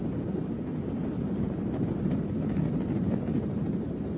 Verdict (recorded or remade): recorded